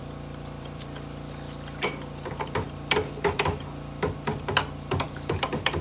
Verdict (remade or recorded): remade